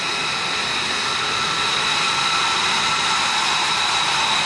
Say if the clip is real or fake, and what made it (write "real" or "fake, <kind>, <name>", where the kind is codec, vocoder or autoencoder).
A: real